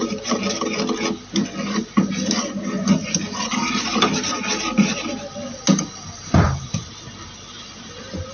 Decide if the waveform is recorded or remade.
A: recorded